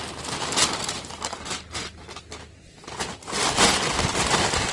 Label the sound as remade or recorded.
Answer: recorded